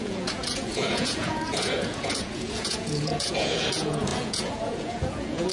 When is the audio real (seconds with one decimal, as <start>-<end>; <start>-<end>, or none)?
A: none